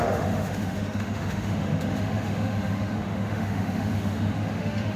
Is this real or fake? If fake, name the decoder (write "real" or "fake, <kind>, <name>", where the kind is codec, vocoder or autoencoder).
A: fake, autoencoder, DAC-VAE